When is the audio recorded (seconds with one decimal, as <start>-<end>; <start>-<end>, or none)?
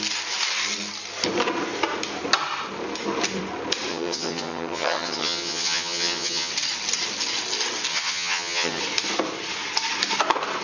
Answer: 0.0-3.9; 6.5-7.9; 8.8-10.6